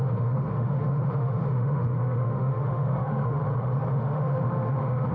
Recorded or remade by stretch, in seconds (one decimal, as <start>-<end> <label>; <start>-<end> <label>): 0.0-3.4 remade; 3.4-3.9 recorded; 3.9-5.1 remade